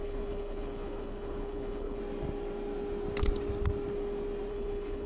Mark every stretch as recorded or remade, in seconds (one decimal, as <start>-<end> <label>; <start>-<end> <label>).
0.0-2.0 remade; 2.0-4.5 recorded; 4.5-5.1 remade